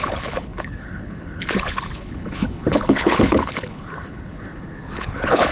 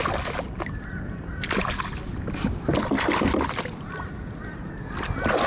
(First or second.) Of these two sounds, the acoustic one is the second